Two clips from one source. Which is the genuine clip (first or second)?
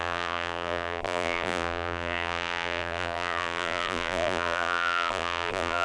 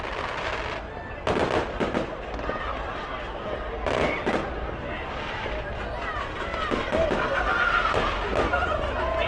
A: second